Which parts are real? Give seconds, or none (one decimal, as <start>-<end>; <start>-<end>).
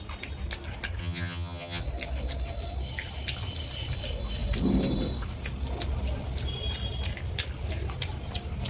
0.0-1.0; 1.8-8.7